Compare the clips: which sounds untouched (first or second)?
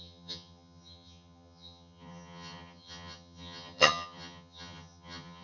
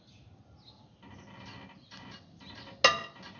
second